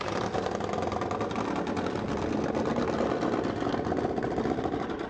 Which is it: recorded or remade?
recorded